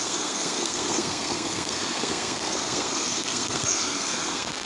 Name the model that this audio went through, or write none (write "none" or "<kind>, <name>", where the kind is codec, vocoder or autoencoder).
codec, SNAC